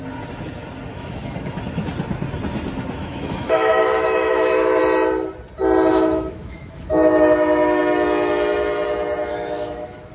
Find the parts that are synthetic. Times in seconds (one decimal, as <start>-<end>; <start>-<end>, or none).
0.9-1.6; 3.0-4.8; 5.9-7.8; 9.3-10.1